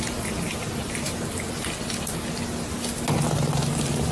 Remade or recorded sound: recorded